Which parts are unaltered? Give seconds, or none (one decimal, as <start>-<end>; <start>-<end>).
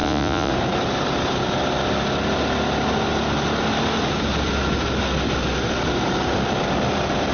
0.5-7.3